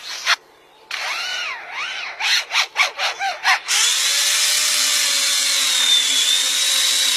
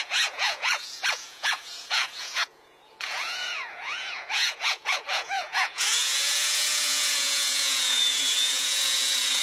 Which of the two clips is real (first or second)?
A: first